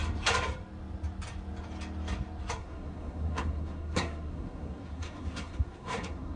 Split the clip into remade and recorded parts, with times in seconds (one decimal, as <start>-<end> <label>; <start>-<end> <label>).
0.0-2.6 recorded; 2.6-6.4 remade